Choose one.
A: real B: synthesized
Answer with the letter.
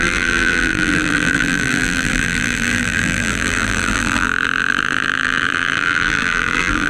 B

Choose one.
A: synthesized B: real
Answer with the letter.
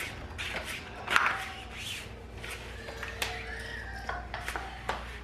B